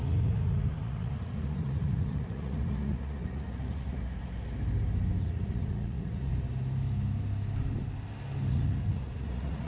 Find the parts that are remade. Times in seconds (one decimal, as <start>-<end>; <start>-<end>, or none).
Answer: 0.0-4.2; 5.2-6.3; 8.5-9.7

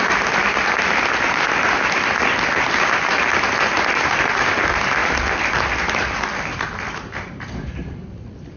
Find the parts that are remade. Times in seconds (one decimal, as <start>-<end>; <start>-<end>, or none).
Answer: none

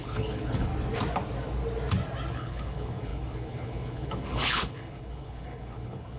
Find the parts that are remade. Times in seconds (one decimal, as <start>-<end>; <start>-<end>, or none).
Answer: 0.0-0.7; 2.3-6.2

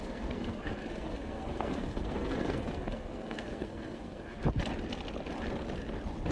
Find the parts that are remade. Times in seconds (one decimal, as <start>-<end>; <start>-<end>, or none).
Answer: 0.0-4.4

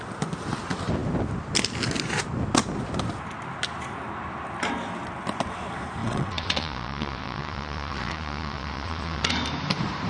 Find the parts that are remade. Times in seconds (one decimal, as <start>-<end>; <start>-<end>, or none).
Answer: 6.0-9.3